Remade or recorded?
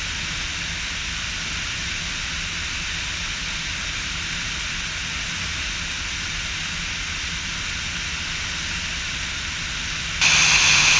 recorded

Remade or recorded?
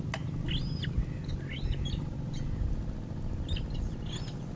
recorded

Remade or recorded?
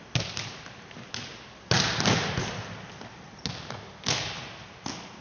recorded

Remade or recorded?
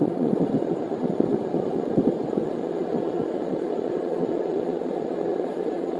remade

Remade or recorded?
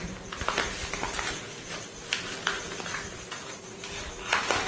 recorded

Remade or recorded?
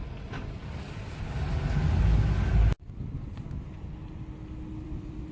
recorded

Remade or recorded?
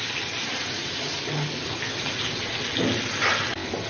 recorded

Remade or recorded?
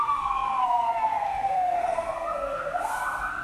remade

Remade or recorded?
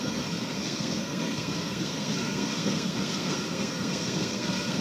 remade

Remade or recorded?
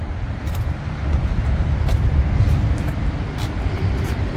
recorded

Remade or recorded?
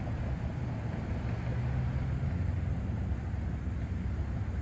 recorded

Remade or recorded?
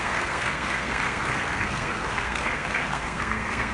remade